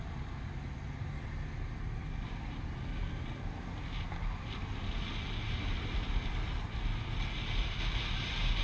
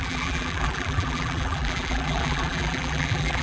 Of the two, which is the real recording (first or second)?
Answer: first